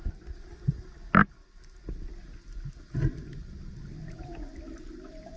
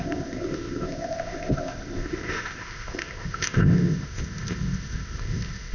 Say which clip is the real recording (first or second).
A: first